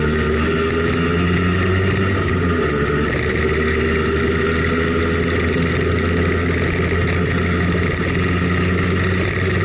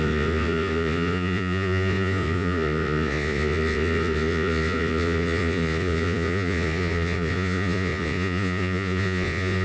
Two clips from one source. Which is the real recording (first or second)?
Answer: first